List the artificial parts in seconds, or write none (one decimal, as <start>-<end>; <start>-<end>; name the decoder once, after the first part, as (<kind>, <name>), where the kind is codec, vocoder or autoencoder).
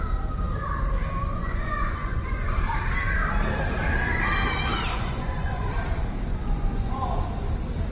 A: 1.3-2.6 (vocoder, Vocos); 4.9-5.7; 6.3-7.2